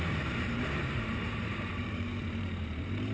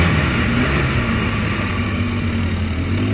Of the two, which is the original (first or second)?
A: second